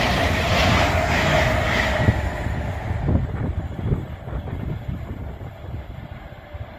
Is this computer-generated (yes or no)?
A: no